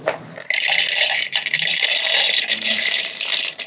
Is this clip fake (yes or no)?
yes